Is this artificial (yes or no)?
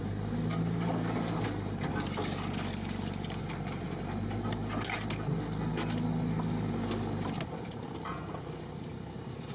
no